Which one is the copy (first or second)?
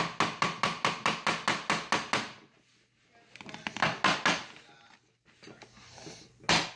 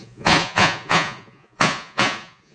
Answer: second